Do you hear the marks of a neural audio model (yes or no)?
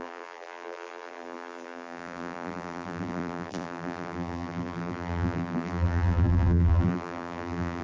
yes